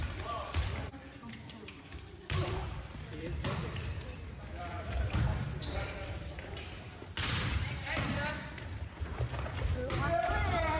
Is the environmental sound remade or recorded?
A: remade